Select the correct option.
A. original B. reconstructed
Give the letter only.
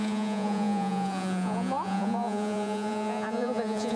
B